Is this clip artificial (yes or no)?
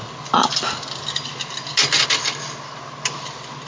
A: no